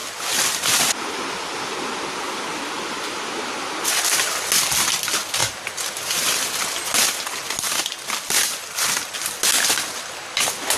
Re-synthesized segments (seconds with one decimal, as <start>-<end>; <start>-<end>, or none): none